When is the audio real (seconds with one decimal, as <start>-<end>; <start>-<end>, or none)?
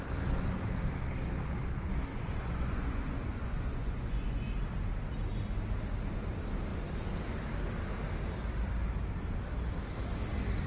0.0-2.1; 4.4-10.7